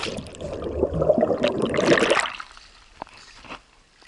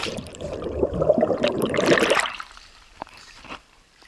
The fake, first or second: second